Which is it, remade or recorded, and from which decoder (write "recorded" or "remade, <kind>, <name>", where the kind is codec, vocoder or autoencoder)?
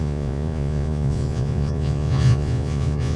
remade, vocoder, Vocos